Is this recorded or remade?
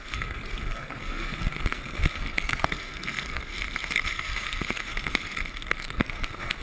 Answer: remade